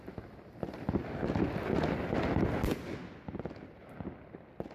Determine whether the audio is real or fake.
real